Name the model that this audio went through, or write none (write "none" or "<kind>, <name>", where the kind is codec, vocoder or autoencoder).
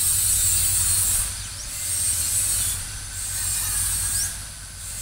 none